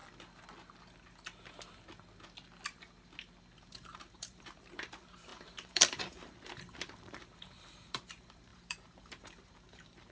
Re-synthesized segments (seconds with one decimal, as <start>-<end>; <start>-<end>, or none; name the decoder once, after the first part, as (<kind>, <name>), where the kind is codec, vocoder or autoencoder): 3.6-10.1 (vocoder, BigVGAN v2)